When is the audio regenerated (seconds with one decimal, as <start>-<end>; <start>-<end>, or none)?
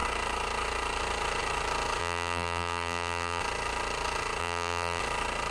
2.0-3.4; 4.4-5.0